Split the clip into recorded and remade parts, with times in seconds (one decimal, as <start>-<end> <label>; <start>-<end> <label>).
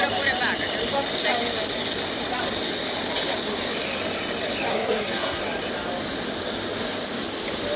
0.0-4.7 recorded; 4.7-5.4 remade; 5.4-7.8 recorded